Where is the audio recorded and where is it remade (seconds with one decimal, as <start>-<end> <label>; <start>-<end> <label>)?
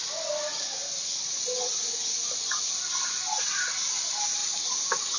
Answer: 0.0-5.2 recorded